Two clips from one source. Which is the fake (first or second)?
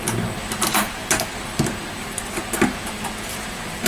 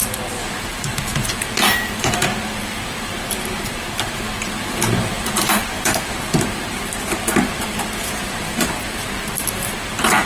second